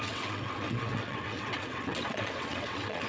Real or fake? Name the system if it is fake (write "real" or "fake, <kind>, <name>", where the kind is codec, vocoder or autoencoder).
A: fake, vocoder, WaveNeXt